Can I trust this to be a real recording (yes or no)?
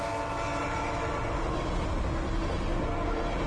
yes